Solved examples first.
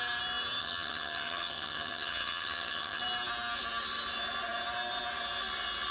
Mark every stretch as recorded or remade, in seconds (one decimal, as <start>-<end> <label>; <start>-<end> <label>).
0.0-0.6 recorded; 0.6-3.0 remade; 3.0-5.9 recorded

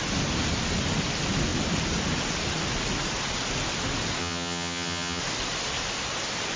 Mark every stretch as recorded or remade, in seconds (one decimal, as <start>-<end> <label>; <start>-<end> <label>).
0.0-4.2 recorded; 4.2-5.2 remade; 5.2-6.6 recorded

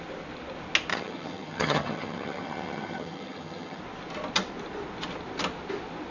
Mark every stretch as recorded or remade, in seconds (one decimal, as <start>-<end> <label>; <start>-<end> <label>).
0.0-0.9 recorded; 0.9-3.8 remade; 3.8-6.1 recorded